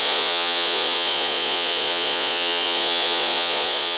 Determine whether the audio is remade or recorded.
remade